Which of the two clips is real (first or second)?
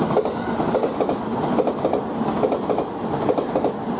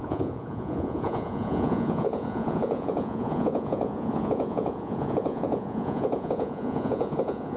first